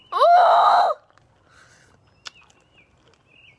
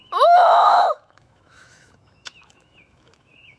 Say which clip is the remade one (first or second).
second